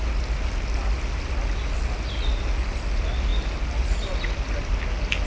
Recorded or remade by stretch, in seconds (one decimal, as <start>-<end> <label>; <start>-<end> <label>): 0.0-5.3 recorded